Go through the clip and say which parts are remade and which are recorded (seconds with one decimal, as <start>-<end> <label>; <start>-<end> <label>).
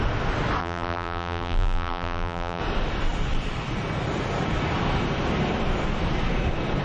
0.0-0.6 recorded; 0.6-2.6 remade; 2.6-6.8 recorded